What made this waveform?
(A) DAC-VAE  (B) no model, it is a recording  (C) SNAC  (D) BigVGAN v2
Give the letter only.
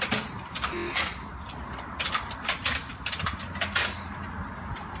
B